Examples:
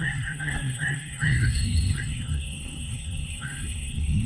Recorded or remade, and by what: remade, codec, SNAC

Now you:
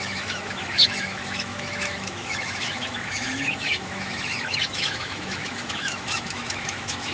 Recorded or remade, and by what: remade, autoencoder, DAC-VAE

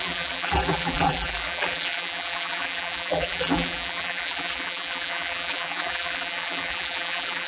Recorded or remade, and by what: remade, vocoder, BigVGAN v2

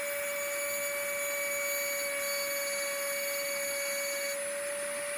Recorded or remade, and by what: recorded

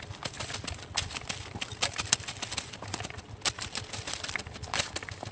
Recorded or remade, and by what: recorded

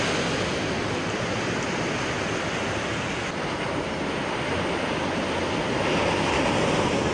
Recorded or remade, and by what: recorded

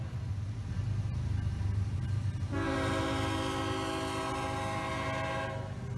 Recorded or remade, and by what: recorded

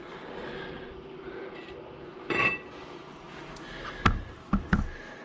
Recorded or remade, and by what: recorded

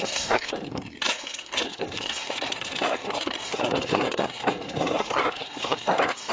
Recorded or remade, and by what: remade, codec, SNAC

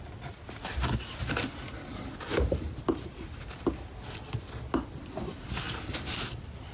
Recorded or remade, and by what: recorded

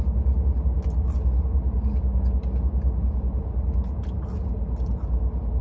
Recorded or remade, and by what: recorded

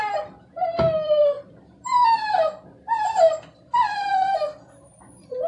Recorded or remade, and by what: recorded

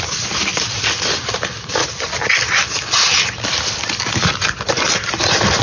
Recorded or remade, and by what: remade, vocoder, BigVGAN v2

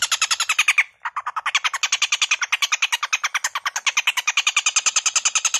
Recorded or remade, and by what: recorded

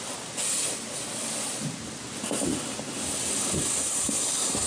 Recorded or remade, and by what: recorded